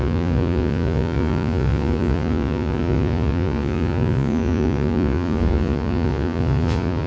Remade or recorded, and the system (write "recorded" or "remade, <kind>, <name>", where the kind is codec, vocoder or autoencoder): remade, vocoder, Vocos